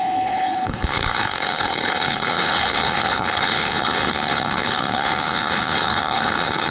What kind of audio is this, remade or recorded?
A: remade